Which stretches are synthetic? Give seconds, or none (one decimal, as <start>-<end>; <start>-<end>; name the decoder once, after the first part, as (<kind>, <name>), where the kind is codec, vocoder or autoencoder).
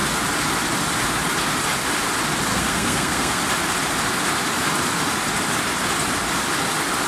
2.5-3.4 (codec, SNAC)